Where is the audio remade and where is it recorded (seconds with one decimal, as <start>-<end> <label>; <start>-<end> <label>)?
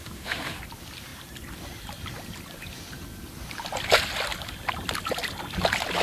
0.0-0.6 remade; 0.6-6.0 recorded